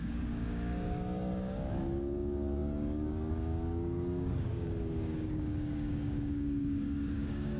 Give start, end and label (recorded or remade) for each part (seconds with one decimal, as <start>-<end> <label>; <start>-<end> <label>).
0.0-7.6 remade